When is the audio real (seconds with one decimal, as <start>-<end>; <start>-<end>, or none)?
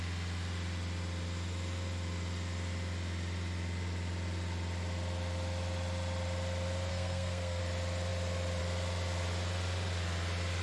0.0-6.9; 7.6-10.6